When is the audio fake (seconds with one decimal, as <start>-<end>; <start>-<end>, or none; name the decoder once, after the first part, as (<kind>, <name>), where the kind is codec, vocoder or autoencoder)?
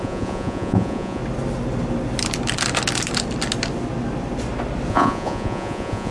0.0-1.2 (vocoder, Vocos); 4.9-6.1